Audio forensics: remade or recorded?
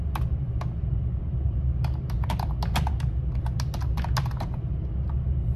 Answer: recorded